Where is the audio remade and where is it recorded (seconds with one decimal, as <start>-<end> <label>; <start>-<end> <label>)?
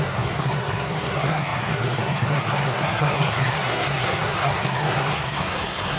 0.0-6.0 remade